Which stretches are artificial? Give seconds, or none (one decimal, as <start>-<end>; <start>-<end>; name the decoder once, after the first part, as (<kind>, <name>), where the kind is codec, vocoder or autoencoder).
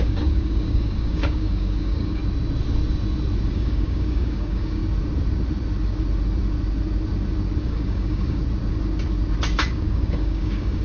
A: 0.0-2.2 (codec, DAC); 3.5-4.8; 7.6-8.4; 9.7-10.8